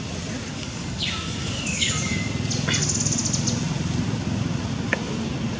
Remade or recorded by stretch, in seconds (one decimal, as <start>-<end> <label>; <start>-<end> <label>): 0.0-0.5 recorded; 0.5-2.3 remade; 2.3-5.6 recorded